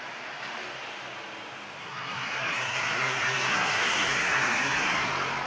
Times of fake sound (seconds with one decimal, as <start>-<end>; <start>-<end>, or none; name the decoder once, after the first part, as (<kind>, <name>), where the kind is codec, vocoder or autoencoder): 1.8-5.1 (codec, SNAC)